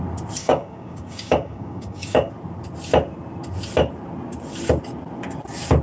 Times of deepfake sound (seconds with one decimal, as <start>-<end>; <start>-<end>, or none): 0.4-2.3